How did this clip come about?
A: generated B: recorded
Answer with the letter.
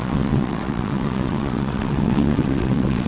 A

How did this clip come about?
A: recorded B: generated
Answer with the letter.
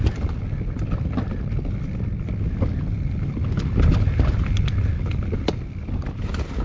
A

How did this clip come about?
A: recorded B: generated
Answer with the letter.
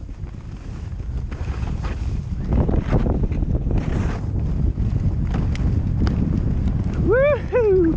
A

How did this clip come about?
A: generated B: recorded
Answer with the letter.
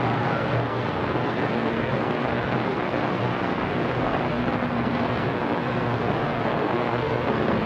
A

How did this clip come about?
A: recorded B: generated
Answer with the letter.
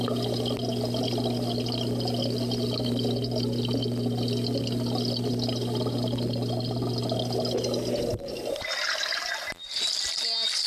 A